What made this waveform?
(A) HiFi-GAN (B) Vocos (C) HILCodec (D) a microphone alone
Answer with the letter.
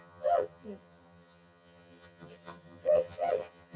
A